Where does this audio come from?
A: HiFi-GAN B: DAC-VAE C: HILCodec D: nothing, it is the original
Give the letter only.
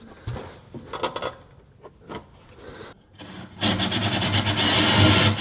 D